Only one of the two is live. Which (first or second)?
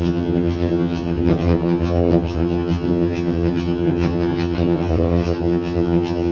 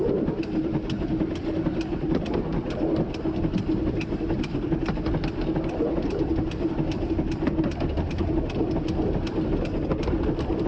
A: second